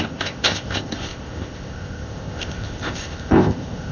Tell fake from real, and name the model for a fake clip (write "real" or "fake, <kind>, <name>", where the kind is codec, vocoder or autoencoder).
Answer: fake, codec, ZipCodec